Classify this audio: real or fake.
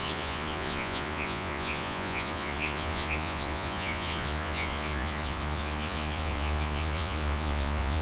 fake